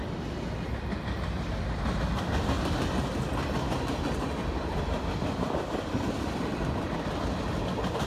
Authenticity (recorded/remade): recorded